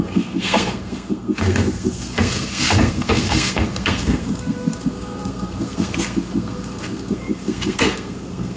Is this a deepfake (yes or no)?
yes